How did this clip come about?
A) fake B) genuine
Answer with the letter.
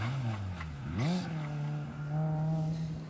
B